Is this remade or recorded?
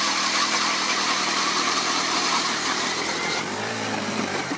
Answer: remade